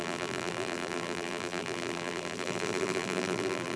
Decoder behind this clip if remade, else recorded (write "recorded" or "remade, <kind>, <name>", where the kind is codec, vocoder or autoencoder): remade, vocoder, BigVGAN v2